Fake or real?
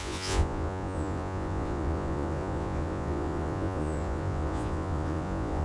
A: fake